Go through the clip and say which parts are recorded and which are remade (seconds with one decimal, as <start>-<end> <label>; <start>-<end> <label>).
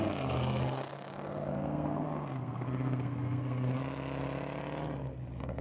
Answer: 0.0-0.4 recorded; 0.4-3.8 remade; 3.8-5.6 recorded